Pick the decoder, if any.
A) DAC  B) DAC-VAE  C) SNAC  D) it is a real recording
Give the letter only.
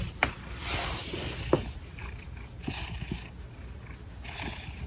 D